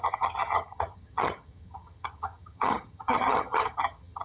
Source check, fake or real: fake